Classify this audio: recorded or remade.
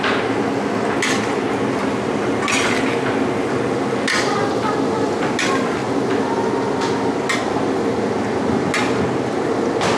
recorded